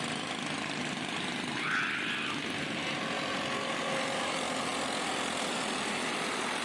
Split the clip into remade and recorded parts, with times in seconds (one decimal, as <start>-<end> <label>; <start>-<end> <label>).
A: 0.0-6.6 recorded